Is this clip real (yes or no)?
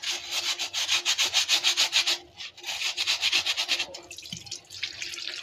yes